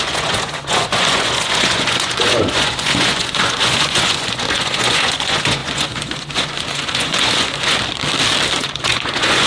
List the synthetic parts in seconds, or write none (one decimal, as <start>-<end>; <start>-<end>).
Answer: 0.0-7.8; 8.6-9.5